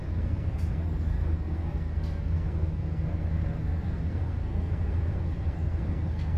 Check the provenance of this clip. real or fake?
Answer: fake